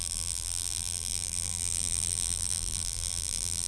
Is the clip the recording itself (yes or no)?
no